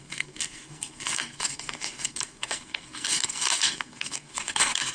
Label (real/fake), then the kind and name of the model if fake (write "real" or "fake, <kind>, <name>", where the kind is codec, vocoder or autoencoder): fake, codec, SNAC